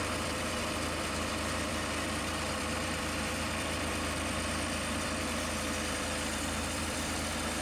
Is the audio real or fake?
fake